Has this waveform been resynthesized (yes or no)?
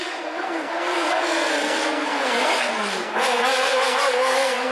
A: yes